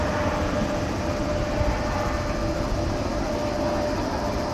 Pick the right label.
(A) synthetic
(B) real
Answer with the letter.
B